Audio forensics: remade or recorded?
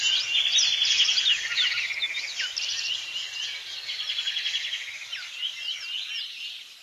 recorded